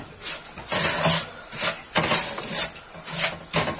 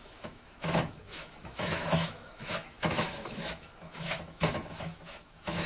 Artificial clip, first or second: second